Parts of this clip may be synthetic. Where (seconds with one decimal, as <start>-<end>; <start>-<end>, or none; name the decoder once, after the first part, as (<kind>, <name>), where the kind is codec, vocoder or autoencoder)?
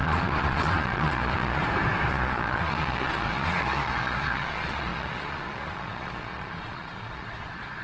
0.0-1.6 (vocoder, Vocos); 2.1-7.8